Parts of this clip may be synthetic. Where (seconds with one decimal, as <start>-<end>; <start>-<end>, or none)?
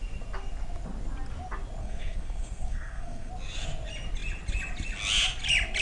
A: 1.8-3.3